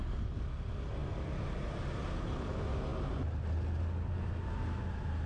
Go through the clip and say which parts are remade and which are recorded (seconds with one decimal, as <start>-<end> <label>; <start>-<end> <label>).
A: 0.0-5.3 recorded